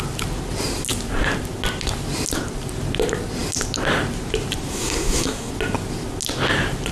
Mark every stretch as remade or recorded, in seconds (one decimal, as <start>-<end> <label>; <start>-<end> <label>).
0.0-4.7 recorded; 4.7-5.5 remade; 5.5-6.9 recorded